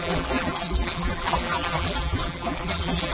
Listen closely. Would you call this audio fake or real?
fake